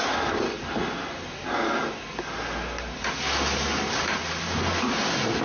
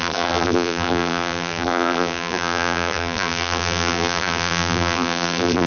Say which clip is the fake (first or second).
second